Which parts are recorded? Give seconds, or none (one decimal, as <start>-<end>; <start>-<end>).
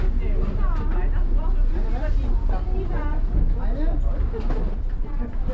0.0-5.5